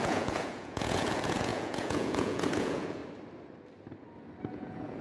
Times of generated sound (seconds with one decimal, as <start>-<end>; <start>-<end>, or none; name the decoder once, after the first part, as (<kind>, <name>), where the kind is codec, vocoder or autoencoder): 0.0-3.0 (vocoder, Vocos); 4.5-5.0